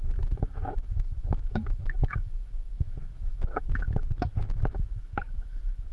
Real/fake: fake